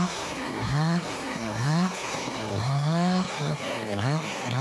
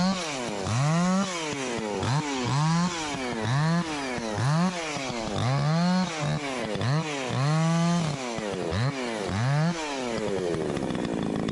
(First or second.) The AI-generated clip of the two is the first